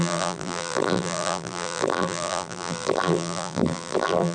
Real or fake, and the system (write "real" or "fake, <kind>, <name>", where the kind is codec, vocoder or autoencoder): fake, vocoder, BigVGAN v2